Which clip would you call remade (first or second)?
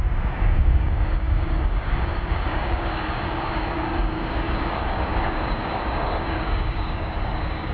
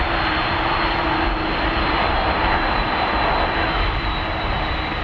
first